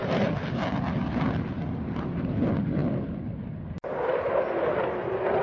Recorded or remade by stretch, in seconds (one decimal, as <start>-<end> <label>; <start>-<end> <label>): 0.0-5.4 recorded